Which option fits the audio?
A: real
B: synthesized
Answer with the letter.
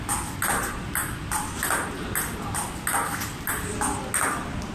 A